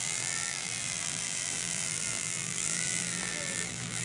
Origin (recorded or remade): remade